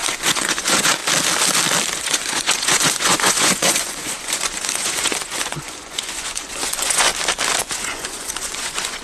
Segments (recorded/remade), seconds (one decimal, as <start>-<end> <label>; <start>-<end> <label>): 0.0-1.0 remade; 1.0-2.0 recorded; 2.0-7.1 remade; 7.1-7.6 recorded; 7.6-9.0 remade